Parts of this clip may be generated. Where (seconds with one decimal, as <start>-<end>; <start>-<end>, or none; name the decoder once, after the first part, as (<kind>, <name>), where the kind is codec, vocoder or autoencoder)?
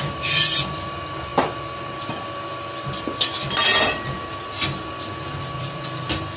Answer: none